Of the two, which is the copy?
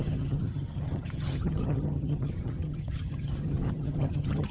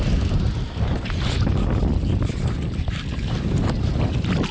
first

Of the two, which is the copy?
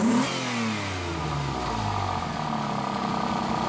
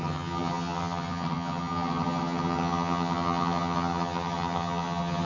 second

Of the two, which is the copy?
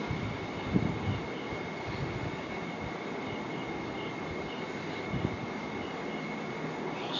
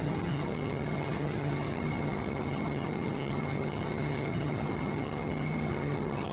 second